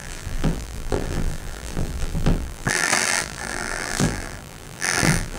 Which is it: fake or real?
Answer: fake